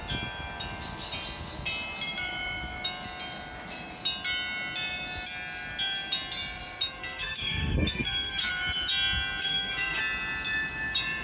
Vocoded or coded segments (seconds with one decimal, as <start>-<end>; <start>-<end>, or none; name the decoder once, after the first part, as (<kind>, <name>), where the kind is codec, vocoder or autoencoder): 7.0-8.5 (codec, SNAC); 9.4-10.0